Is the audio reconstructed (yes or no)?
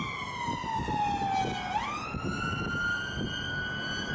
no